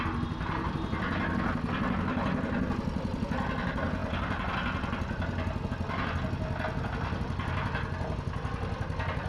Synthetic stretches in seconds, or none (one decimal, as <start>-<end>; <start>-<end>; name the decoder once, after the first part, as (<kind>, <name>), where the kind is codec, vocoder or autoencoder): none